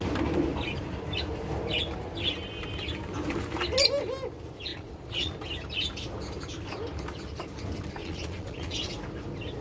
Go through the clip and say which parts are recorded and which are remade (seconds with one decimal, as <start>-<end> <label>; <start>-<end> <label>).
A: 0.0-4.7 recorded; 4.7-5.3 remade; 5.3-8.0 recorded; 8.0-8.9 remade; 8.9-9.6 recorded